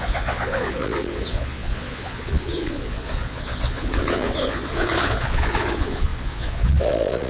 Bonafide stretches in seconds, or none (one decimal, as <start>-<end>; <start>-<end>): none